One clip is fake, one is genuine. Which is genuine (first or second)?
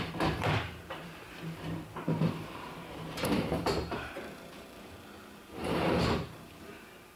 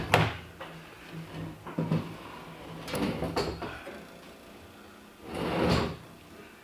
second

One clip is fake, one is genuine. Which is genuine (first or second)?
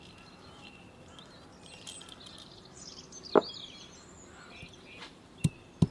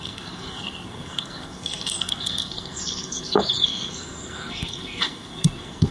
first